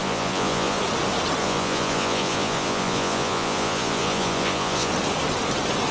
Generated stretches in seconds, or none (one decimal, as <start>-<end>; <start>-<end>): 0.0-0.8; 1.4-4.9